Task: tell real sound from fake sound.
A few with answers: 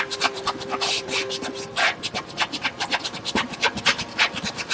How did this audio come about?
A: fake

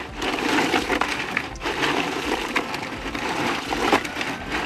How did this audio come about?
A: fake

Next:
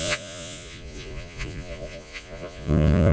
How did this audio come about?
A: fake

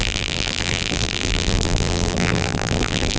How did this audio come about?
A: fake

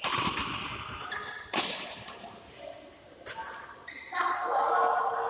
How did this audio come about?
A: real